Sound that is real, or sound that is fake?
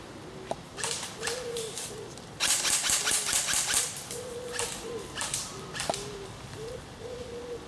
fake